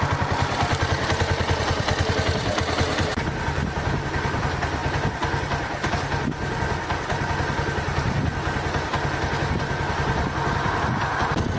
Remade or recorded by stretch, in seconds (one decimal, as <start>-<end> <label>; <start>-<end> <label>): 0.0-11.6 recorded